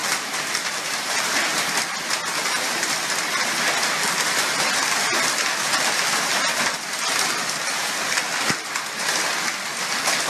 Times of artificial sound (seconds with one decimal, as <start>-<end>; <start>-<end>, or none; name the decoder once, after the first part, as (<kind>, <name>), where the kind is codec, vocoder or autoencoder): none